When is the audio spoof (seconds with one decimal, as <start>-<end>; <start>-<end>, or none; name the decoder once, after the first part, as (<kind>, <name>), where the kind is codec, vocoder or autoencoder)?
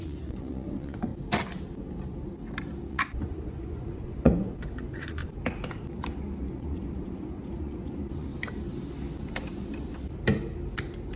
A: 0.0-1.1 (vocoder, Vocos); 2.9-5.2; 6.5-8.3